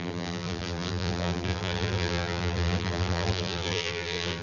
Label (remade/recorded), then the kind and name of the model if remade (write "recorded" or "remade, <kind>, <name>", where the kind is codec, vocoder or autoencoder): remade, vocoder, BigVGAN v2